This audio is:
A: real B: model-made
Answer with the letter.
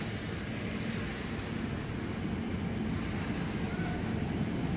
A